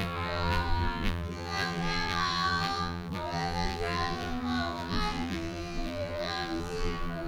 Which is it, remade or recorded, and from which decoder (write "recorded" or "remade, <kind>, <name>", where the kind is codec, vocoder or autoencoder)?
remade, vocoder, BigVGAN v2